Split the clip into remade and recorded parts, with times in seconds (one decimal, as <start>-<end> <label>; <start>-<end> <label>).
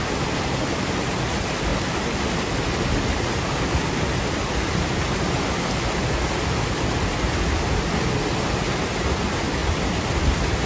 0.0-10.7 recorded